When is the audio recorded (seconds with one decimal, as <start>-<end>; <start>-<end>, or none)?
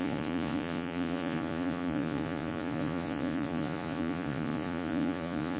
none